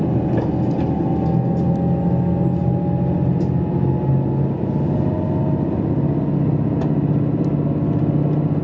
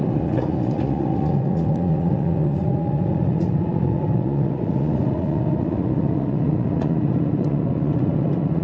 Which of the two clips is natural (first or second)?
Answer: first